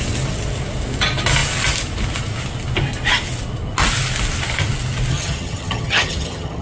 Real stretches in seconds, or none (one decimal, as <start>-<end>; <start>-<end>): 0.0-5.1